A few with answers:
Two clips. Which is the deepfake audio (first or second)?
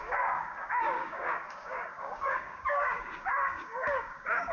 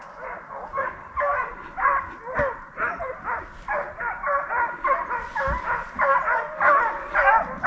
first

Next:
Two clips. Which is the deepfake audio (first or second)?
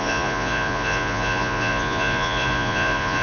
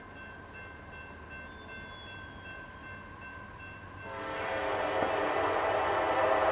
first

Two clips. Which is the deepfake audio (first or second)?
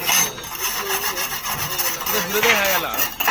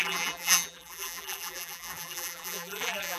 second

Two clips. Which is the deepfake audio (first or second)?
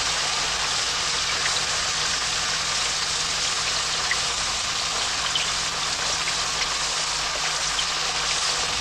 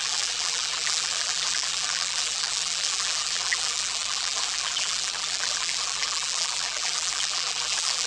second